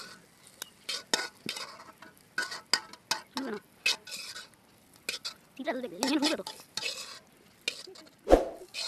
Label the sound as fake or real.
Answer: real